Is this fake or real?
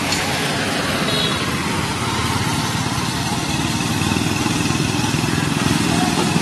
real